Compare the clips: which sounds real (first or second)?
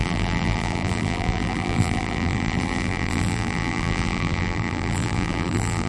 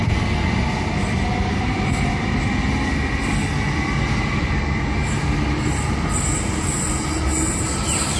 second